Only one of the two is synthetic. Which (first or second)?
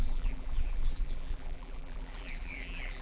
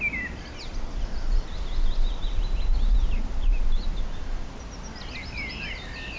first